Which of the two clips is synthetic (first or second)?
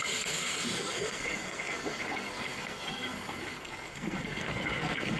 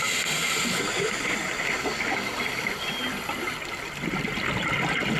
first